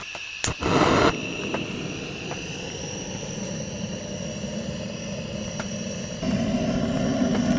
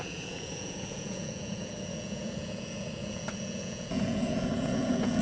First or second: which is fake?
second